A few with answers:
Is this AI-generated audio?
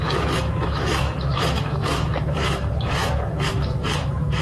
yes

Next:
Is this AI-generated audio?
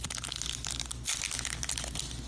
no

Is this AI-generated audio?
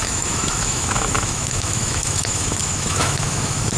yes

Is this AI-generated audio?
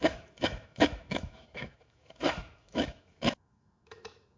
yes